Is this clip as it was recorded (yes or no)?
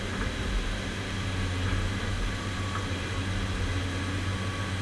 yes